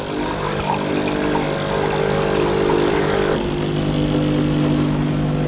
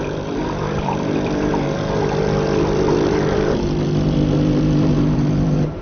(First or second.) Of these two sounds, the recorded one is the first